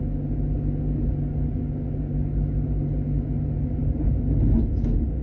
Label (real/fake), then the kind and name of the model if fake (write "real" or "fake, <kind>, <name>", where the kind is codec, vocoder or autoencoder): real